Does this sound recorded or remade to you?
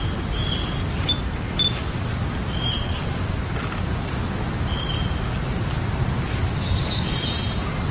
recorded